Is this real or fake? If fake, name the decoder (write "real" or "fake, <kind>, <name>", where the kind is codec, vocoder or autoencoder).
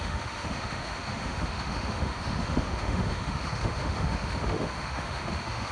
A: fake, autoencoder, DAC-VAE